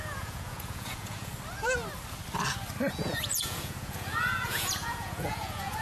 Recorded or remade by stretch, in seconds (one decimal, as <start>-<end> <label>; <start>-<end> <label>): 0.0-1.3 remade; 1.3-2.9 recorded; 2.9-5.8 remade